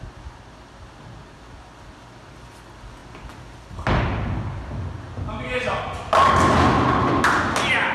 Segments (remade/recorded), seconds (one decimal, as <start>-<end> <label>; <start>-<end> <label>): 0.0-7.9 recorded